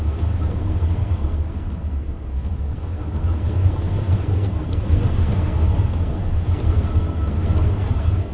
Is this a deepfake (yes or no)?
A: yes